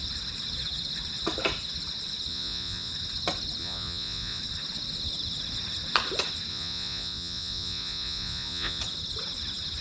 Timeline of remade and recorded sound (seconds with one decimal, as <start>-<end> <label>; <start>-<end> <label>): 0.0-2.3 recorded; 2.3-2.9 remade; 2.9-3.6 recorded; 3.6-4.4 remade; 4.4-6.5 recorded; 6.5-8.8 remade; 8.8-9.8 recorded